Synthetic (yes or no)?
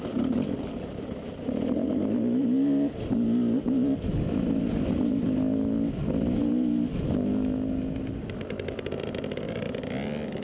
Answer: no